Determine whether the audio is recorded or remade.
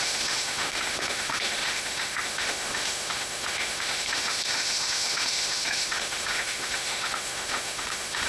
remade